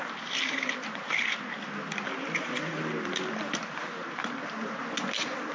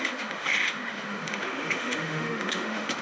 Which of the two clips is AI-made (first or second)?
second